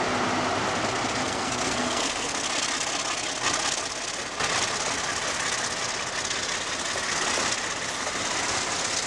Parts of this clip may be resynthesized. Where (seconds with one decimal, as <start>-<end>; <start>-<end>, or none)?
1.2-2.4